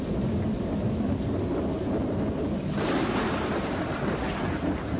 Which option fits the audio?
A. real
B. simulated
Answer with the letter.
A